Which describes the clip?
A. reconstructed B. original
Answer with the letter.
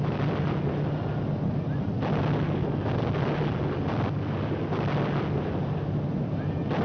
B